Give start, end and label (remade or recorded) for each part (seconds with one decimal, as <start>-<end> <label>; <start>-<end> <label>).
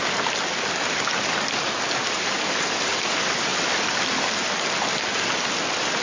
0.0-6.0 recorded